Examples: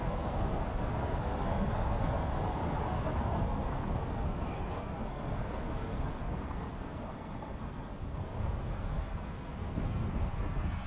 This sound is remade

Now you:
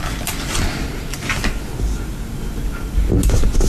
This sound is recorded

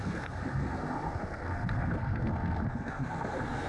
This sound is remade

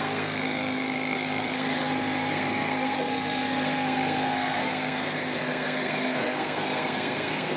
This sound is remade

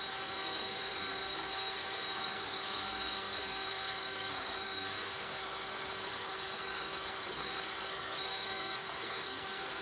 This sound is remade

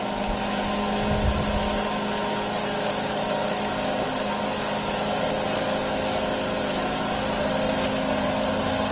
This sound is recorded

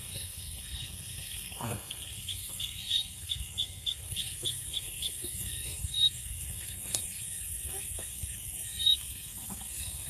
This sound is remade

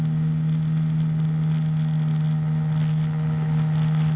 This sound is recorded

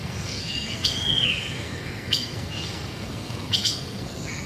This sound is remade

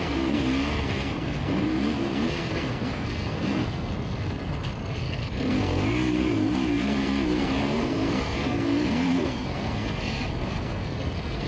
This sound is remade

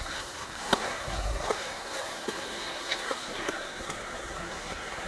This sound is remade